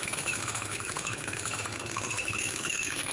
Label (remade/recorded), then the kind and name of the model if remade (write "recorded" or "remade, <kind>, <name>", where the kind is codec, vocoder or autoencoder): remade, autoencoder, DAC-VAE